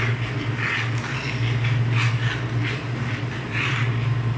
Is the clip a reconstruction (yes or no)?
no